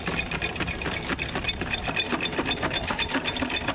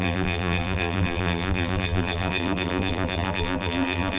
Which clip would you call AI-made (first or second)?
second